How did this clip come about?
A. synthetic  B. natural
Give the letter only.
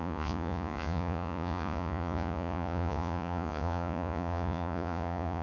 A